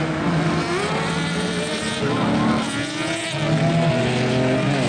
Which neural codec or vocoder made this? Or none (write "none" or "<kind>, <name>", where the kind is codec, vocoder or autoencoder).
none